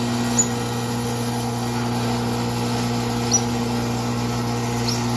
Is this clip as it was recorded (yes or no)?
yes